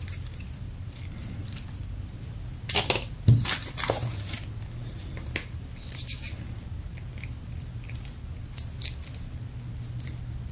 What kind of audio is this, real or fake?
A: real